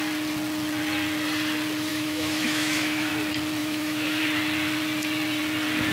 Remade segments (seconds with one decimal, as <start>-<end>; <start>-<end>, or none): 1.9-3.1; 3.6-4.2